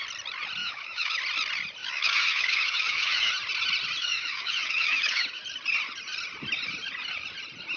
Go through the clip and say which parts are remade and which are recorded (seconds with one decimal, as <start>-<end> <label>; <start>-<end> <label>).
0.0-0.6 recorded; 0.6-1.2 remade; 1.2-1.8 recorded; 1.8-3.3 remade; 3.3-4.0 recorded; 4.0-5.4 remade; 5.4-7.8 recorded